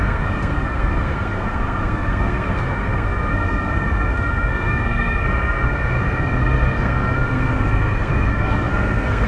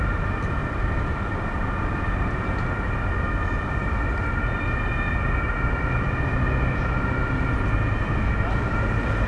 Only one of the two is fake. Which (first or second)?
first